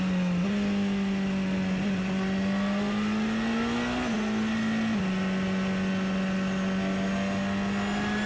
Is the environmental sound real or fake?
real